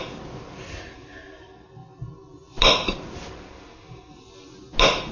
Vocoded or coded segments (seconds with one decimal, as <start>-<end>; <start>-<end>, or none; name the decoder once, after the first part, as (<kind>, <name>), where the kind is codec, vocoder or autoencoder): none